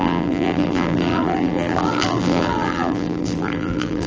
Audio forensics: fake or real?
fake